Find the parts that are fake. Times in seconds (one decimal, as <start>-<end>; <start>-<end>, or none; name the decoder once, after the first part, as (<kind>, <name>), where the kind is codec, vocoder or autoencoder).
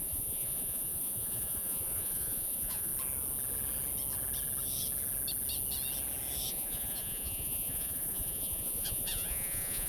0.0-2.9 (vocoder, Vocos); 6.5-9.9